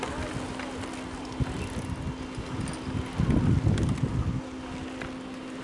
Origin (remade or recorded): recorded